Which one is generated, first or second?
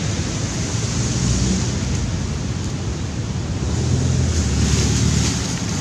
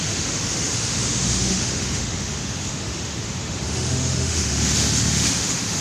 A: second